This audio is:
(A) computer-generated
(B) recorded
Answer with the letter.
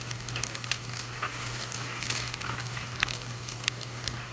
A